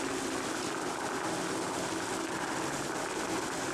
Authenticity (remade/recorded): recorded